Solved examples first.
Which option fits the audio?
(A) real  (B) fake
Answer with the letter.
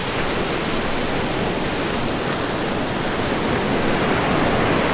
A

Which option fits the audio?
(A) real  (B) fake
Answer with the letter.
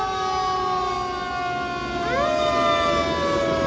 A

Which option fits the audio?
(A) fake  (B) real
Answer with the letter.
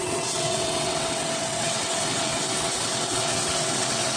A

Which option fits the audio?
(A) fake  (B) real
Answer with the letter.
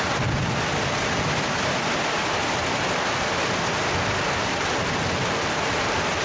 B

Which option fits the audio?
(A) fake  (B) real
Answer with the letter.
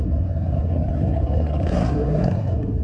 A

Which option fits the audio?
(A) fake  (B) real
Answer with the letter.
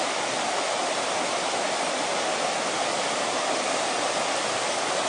B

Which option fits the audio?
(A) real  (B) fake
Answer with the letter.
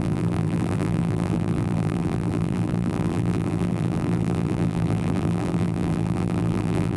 B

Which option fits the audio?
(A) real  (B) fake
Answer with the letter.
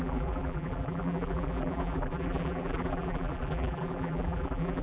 B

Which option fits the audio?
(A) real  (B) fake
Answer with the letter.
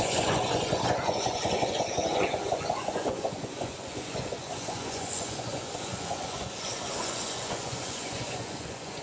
B